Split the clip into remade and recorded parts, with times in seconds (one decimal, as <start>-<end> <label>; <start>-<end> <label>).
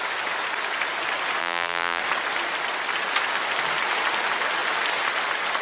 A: 0.0-1.4 recorded; 1.4-2.0 remade; 2.0-5.6 recorded